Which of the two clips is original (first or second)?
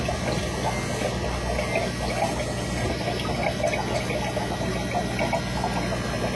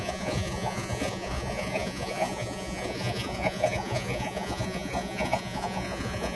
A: first